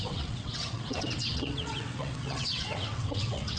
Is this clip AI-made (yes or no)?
yes